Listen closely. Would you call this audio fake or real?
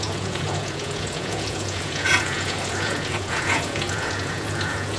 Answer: fake